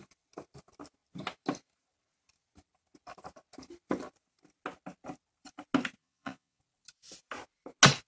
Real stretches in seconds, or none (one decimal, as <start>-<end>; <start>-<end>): 0.0-6.0; 6.6-8.1